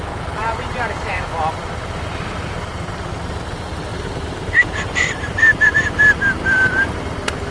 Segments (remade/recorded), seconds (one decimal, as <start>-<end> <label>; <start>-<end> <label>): 0.0-0.4 recorded; 0.4-1.2 remade; 1.2-3.9 recorded; 3.9-6.9 remade; 6.9-7.5 recorded